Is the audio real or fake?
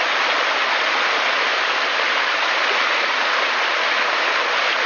real